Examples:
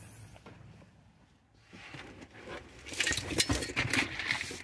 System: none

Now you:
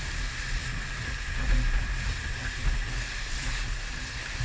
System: none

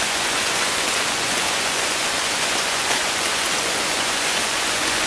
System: vocoder, Vocos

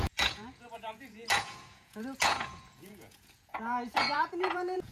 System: vocoder, Vocos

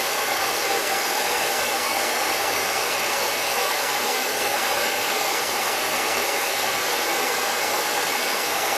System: codec, SNAC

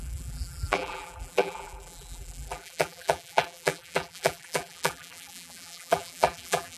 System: vocoder, BigVGAN v2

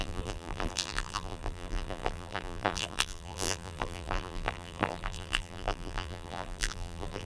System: vocoder, BigVGAN v2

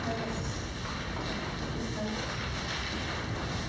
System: none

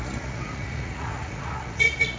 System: vocoder, Vocos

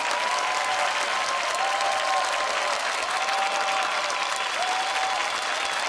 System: none